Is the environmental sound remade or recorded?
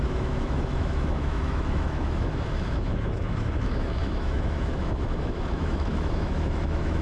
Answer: remade